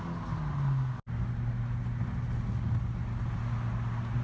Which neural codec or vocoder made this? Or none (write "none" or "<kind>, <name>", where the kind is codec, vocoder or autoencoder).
none